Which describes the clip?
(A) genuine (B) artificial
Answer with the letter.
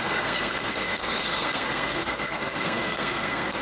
B